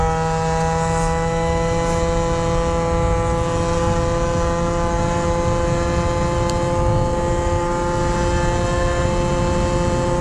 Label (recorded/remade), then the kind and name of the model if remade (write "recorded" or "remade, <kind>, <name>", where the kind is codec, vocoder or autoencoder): recorded